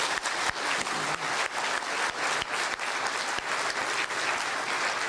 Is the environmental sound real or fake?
real